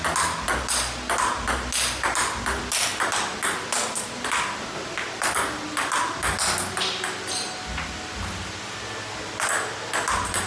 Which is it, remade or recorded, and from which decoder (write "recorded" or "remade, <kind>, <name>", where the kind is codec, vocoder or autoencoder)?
recorded